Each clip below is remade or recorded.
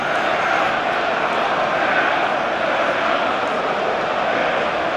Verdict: recorded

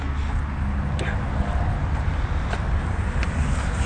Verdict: recorded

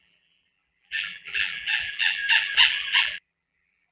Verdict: remade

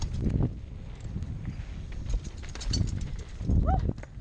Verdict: recorded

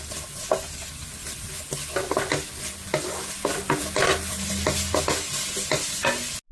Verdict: recorded